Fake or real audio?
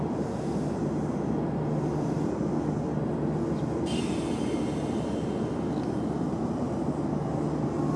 real